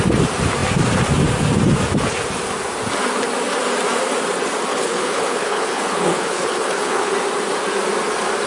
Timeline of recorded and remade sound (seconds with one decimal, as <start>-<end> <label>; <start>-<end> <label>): 0.0-4.7 recorded; 4.7-7.1 remade; 7.1-8.5 recorded